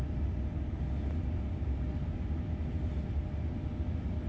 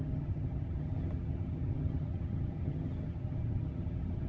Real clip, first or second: first